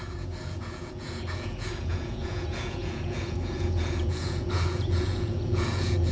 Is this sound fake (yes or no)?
yes